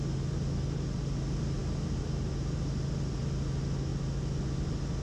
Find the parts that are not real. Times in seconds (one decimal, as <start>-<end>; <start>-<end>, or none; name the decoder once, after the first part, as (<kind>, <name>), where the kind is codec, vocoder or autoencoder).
none